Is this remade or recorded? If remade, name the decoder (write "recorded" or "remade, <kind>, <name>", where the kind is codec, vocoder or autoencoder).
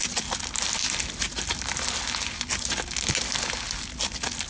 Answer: recorded